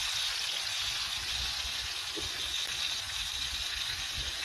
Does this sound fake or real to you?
fake